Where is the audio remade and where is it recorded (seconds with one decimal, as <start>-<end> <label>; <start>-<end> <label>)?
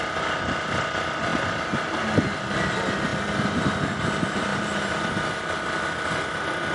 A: 0.0-1.3 recorded; 1.3-2.0 remade; 2.0-4.5 recorded; 4.5-5.4 remade; 5.4-6.7 recorded